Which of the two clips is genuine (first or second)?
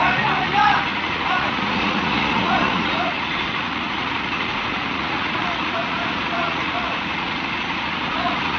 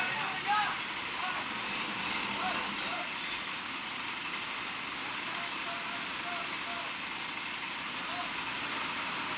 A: second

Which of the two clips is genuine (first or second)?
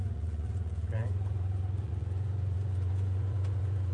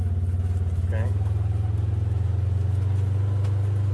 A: second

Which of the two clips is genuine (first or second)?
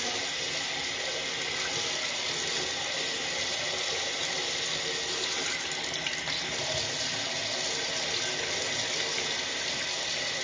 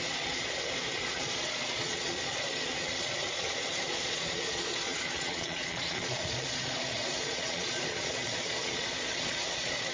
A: first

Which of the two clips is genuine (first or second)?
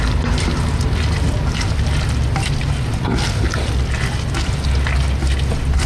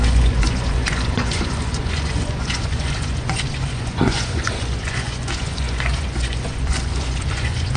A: first